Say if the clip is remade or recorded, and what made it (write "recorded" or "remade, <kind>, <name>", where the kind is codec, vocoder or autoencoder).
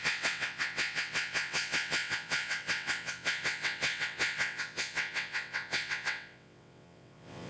remade, vocoder, WaveNeXt